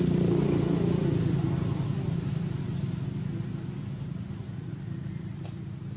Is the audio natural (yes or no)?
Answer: yes